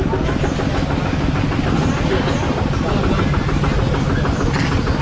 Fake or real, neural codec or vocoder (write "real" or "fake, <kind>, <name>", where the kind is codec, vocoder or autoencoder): real